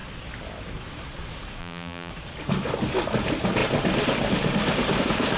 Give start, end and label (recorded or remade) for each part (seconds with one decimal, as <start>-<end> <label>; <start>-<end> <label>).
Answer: 0.0-1.6 recorded; 1.6-2.1 remade; 2.1-5.4 recorded